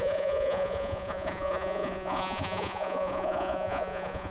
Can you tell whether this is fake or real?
fake